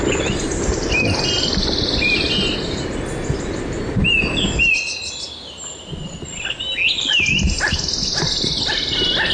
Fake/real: real